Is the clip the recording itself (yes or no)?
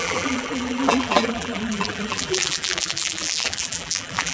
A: no